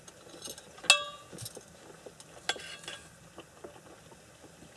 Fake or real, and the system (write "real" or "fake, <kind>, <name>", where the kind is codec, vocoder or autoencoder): real